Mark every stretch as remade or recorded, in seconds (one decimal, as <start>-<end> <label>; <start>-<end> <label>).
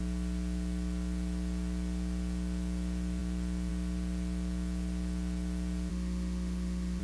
0.0-5.9 recorded; 5.9-7.0 remade